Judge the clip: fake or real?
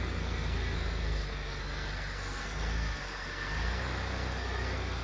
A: fake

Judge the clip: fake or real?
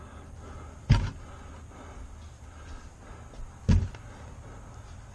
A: real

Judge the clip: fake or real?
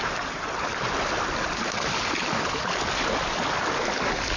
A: real